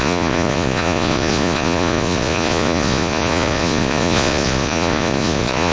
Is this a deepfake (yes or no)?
yes